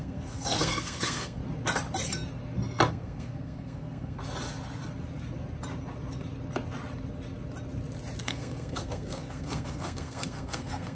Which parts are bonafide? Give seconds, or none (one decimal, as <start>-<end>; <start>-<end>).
1.4-2.9; 4.2-8.2